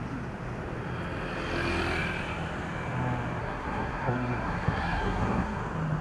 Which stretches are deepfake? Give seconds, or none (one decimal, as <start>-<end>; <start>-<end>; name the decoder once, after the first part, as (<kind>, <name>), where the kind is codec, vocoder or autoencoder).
3.4-5.6 (codec, SNAC)